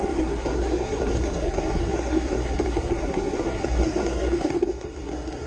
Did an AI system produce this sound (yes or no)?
yes